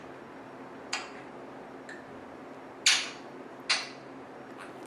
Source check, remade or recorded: recorded